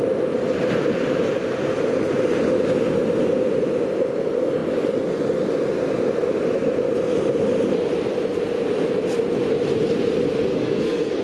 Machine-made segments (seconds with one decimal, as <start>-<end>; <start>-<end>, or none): 10.5-11.2